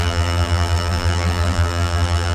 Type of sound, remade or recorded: remade